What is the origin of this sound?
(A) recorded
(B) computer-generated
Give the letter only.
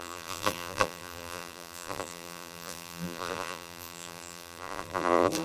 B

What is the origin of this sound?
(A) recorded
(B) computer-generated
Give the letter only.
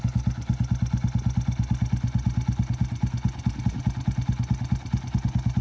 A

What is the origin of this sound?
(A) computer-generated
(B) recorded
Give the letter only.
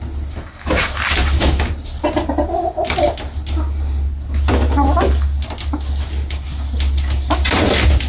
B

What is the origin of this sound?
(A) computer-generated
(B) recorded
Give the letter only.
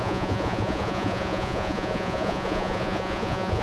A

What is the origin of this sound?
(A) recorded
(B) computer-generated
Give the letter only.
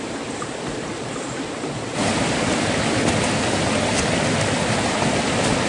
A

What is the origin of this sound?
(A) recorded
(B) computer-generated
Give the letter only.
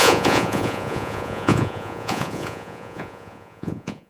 B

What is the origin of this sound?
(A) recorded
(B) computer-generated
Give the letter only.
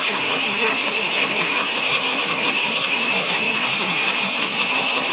B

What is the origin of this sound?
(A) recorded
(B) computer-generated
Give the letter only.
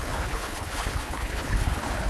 B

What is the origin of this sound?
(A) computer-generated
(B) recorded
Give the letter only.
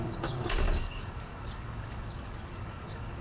A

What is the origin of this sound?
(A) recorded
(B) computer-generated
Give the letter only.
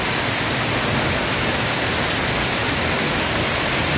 A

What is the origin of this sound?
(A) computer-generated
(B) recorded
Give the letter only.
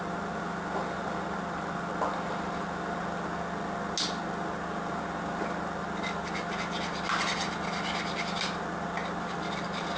B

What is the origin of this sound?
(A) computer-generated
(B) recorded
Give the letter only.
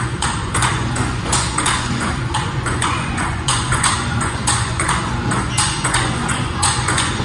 A